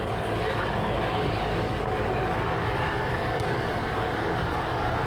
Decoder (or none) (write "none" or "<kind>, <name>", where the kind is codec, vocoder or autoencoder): codec, DAC